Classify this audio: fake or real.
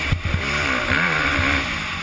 real